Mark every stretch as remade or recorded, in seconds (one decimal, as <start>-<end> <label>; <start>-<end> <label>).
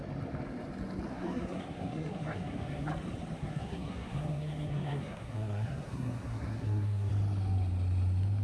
0.0-1.1 recorded; 1.1-2.9 remade; 2.9-3.4 recorded; 3.4-7.1 remade; 7.1-8.4 recorded